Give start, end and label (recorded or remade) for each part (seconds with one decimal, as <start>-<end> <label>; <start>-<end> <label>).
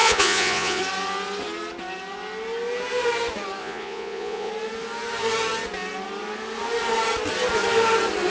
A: 0.0-0.8 remade; 0.8-3.6 recorded; 3.6-4.5 remade; 4.5-8.3 recorded